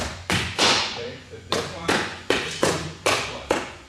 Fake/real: fake